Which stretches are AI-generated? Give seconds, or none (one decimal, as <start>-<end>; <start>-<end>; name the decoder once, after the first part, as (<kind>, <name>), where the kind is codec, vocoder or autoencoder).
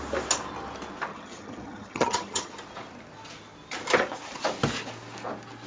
1.1-2.5 (vocoder, HiFi-GAN)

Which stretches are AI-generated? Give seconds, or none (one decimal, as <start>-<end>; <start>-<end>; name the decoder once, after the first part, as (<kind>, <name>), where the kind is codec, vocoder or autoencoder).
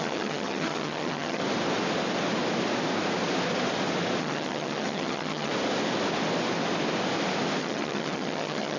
0.0-1.4 (vocoder, HiFi-GAN); 4.2-5.5; 7.6-8.8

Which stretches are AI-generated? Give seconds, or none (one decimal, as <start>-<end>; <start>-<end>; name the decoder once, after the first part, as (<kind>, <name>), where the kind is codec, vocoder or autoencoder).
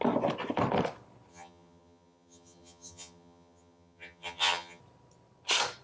1.3-4.8 (vocoder, HiFi-GAN)